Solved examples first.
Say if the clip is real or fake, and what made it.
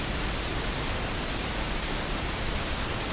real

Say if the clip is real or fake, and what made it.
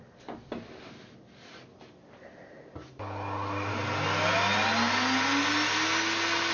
real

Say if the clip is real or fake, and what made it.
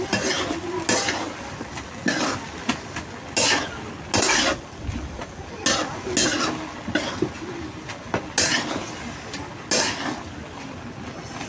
real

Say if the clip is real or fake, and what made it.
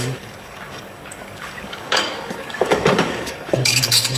fake, codec, DAC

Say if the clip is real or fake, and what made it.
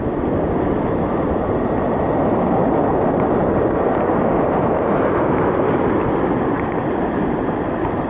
real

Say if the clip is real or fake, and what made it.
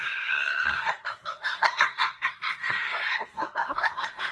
fake, codec, SNAC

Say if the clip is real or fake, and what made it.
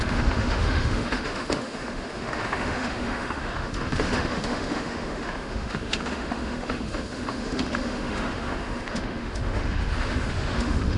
fake, autoencoder, DAC-VAE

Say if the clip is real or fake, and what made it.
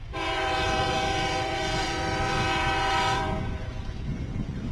fake, vocoder, Vocos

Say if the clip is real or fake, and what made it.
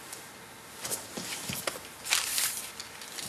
real